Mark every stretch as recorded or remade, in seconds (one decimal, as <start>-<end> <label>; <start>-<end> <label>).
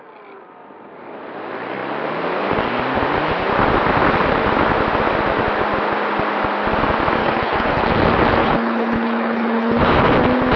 0.0-7.2 recorded; 7.2-7.8 remade; 7.8-8.4 recorded; 8.4-9.9 remade; 9.9-10.6 recorded